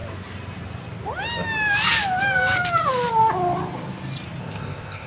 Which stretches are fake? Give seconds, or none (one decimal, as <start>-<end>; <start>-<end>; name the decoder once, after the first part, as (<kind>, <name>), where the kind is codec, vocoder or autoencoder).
4.4-5.1 (codec, ZipCodec)

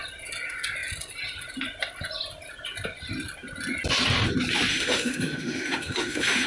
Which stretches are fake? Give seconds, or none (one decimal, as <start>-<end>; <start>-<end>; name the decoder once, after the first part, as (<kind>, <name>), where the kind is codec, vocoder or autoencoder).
4.7-6.5 (autoencoder, DAC-VAE)

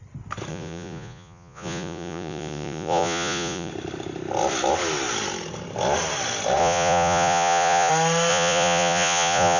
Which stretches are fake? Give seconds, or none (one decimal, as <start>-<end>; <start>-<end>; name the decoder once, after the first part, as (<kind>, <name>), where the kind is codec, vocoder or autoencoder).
0.5-3.7 (vocoder, Vocos); 6.6-7.9; 8.3-9.6